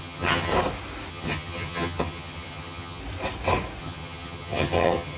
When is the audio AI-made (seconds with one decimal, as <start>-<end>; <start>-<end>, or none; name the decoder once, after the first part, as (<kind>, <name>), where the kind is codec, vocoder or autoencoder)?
0.0-0.5 (vocoder, HiFi-GAN); 1.1-3.0; 3.8-5.2